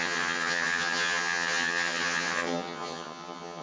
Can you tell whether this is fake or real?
fake